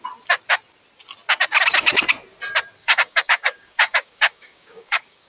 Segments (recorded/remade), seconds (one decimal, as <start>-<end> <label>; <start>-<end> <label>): 0.0-2.8 recorded; 2.8-5.3 remade